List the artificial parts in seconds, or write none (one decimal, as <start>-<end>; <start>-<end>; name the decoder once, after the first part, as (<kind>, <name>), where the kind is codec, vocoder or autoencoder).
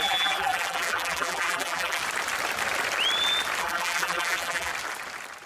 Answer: 0.0-2.0 (vocoder, BigVGAN v2); 3.6-4.7